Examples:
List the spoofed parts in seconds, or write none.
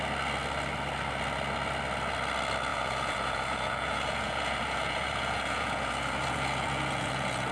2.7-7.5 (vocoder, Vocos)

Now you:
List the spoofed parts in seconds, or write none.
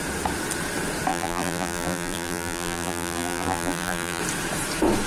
1.1-4.2 (vocoder, BigVGAN v2)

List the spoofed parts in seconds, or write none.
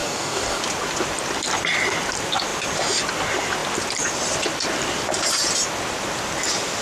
0.0-0.6 (codec, DAC)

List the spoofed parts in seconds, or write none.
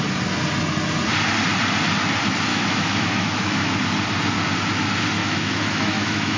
2.5-3.7 (autoencoder, DAC-VAE); 5.2-6.4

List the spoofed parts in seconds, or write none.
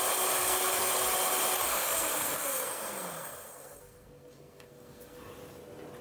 0.4-0.9 (codec, SNAC); 1.7-5.3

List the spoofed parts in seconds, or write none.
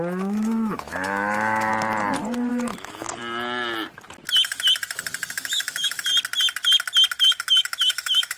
0.0-1.7 (autoencoder, DAC-VAE); 2.5-3.2; 5.3-6.1; 7.2-8.4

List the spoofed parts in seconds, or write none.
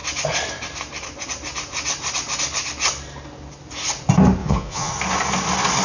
4.4-4.9 (vocoder, Vocos)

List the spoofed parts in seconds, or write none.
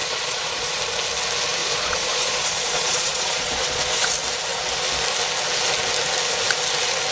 0.0-0.8 (vocoder, Vocos); 1.6-4.1